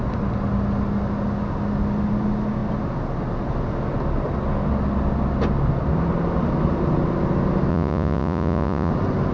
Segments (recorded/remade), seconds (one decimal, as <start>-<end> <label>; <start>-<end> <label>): 0.0-7.7 recorded; 7.7-8.9 remade; 8.9-9.3 recorded